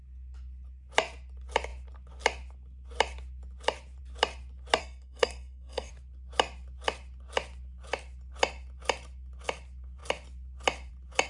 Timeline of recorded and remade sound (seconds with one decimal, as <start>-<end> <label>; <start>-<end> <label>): 0.0-4.8 recorded; 4.8-5.9 remade; 5.9-11.3 recorded

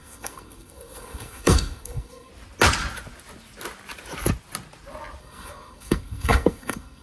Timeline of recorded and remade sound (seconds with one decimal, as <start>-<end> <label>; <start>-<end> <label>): 0.0-2.3 remade; 2.3-5.2 recorded; 5.2-7.0 remade

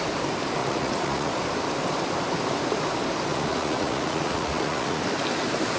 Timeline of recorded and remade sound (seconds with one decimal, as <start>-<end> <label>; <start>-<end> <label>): 0.0-0.6 recorded; 0.6-1.3 remade; 1.3-3.3 recorded; 3.3-5.0 remade; 5.0-5.8 recorded

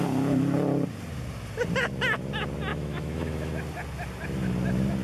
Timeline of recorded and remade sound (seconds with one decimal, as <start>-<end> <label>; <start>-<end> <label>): 0.0-2.7 recorded; 2.7-3.5 remade; 3.5-5.0 recorded

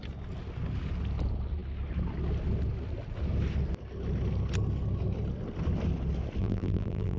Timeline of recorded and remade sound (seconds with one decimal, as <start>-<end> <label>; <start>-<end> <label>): 0.0-6.4 recorded; 6.4-7.2 remade

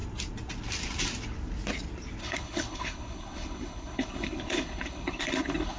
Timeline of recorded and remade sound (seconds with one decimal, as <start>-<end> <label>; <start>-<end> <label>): 0.0-2.2 recorded; 2.2-5.8 remade

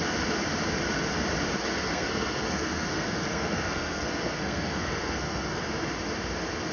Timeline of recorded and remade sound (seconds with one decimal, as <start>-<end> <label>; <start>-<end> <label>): 0.0-1.7 recorded; 1.7-5.7 remade; 5.7-6.7 recorded